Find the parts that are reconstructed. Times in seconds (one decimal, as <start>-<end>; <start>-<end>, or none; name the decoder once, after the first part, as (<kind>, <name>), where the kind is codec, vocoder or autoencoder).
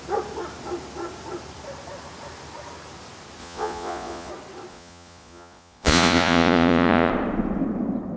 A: 3.4-4.3 (vocoder, Vocos); 4.7-7.1